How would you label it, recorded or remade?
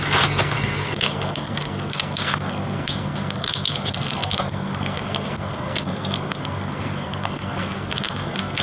remade